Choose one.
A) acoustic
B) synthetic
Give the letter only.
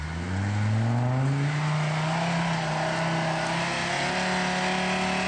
A